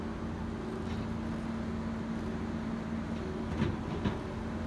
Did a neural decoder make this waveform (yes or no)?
no